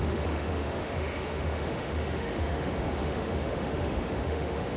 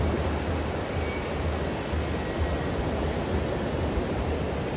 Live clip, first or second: second